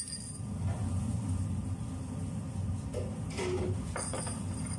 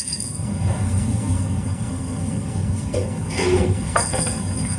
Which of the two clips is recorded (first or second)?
first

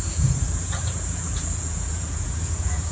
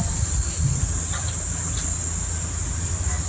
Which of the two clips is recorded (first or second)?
second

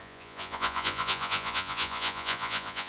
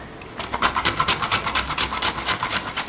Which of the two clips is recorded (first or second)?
second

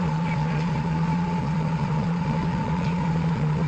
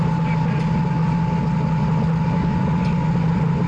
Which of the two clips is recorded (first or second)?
second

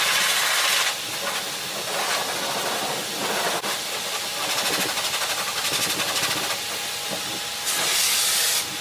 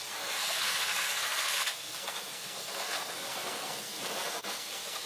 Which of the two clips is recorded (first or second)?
first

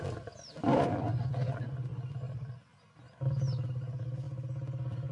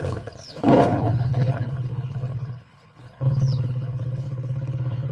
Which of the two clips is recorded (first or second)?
first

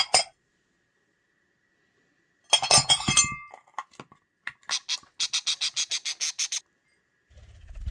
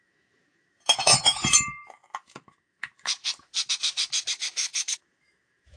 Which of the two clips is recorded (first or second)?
first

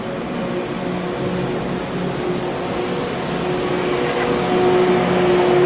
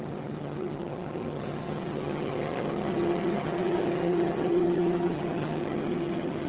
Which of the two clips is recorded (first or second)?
first